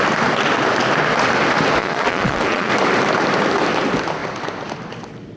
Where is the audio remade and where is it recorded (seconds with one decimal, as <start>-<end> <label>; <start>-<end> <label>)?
0.0-1.8 recorded; 1.8-2.7 remade; 2.7-5.4 recorded